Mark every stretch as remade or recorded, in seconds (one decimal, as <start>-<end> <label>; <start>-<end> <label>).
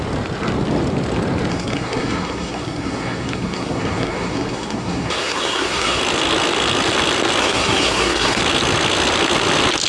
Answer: 0.0-1.5 recorded; 1.5-6.0 remade; 6.0-7.4 recorded; 7.4-8.4 remade; 8.4-9.9 recorded